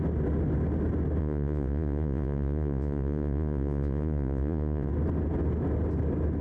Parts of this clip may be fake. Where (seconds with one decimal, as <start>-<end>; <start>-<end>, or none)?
1.2-4.9